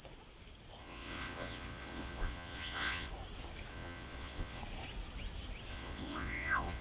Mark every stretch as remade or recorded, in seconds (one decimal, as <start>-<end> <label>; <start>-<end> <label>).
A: 0.0-0.8 recorded; 0.8-3.1 remade; 3.1-3.7 recorded; 3.7-4.6 remade; 4.6-5.7 recorded; 5.7-6.8 remade